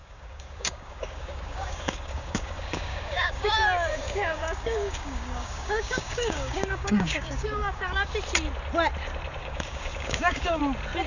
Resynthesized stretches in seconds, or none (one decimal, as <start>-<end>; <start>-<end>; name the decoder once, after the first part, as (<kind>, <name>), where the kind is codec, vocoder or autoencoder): 0.0-3.5 (codec, DAC); 3.9-8.1; 9.4-10.6